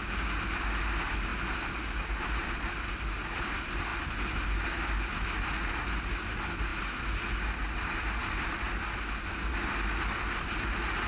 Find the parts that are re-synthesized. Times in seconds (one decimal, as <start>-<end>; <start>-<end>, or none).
none